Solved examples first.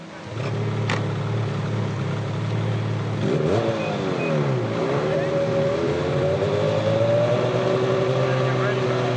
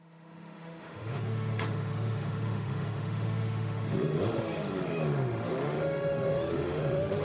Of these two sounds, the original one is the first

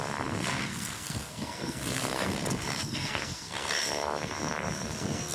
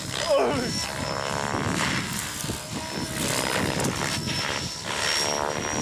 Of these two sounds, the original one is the second